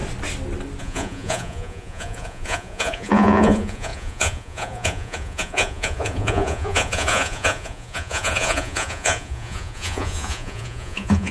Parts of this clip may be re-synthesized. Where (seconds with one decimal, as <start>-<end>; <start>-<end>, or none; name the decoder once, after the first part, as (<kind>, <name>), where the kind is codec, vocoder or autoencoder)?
0.8-11.3 (vocoder, Vocos)